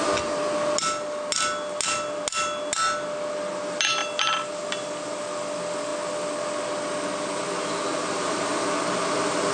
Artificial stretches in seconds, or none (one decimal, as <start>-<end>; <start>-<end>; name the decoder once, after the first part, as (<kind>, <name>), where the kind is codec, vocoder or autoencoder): 7.9-8.5 (vocoder, BigVGAN v2)